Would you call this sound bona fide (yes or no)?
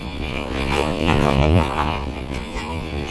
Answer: no